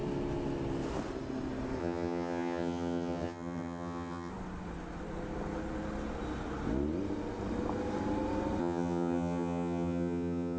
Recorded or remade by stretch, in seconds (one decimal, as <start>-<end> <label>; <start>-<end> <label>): 0.0-1.8 recorded; 1.8-4.3 remade; 4.3-8.6 recorded; 8.6-10.6 remade